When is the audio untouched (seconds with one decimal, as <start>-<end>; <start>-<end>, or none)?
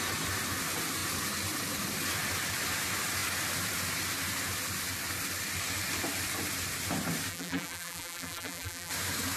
0.0-7.3; 8.9-9.4